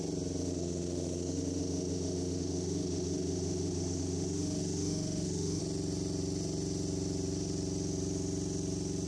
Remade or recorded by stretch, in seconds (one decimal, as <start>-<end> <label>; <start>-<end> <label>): 0.0-0.4 recorded; 0.4-5.6 remade; 5.6-9.1 recorded